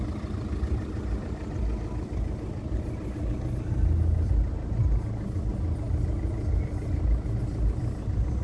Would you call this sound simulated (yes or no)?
no